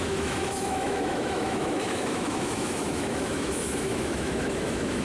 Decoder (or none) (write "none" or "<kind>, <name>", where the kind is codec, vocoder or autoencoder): autoencoder, DAC-VAE